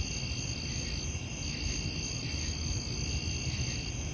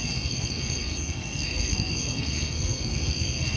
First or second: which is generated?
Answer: second